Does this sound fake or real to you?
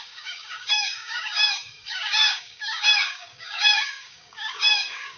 fake